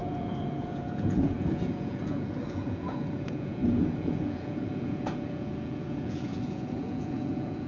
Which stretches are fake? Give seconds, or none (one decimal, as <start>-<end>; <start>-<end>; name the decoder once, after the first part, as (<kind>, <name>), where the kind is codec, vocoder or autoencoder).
0.0-7.7 (vocoder, Vocos)

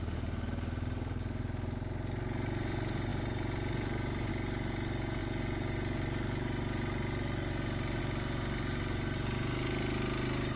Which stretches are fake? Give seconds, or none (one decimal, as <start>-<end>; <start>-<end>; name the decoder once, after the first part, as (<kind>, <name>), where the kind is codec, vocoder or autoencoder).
none

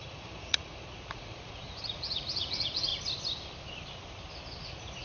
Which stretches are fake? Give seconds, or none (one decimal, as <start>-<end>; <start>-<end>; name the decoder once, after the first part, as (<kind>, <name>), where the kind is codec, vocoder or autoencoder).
0.0-2.9 (vocoder, Vocos); 4.6-5.0

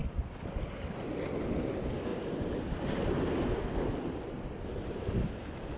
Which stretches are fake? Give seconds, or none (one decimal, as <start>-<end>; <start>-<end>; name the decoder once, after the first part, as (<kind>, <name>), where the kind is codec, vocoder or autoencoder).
none

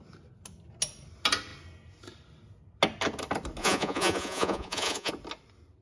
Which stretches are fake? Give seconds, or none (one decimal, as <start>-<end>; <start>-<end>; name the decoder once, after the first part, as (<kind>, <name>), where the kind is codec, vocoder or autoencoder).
3.6-5.1 (vocoder, Vocos)

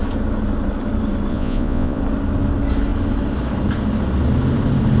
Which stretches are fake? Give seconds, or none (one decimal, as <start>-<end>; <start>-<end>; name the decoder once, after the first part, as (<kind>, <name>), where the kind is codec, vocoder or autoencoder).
1.3-2.0 (vocoder, Vocos)

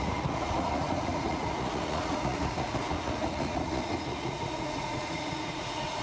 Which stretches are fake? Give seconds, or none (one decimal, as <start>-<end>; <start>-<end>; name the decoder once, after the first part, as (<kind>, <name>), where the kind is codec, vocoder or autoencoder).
0.0-6.0 (vocoder, Vocos)